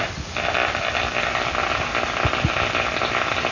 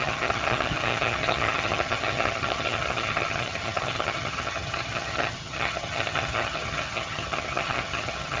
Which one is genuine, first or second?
first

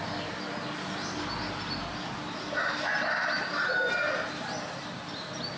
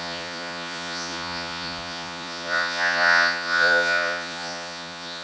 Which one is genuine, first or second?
first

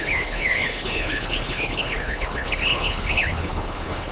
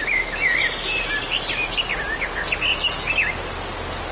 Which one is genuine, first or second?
second